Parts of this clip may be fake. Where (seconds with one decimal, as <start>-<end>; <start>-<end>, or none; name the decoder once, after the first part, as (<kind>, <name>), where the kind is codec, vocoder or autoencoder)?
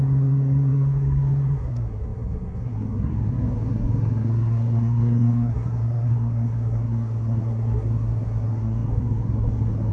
0.0-9.9 (codec, SNAC)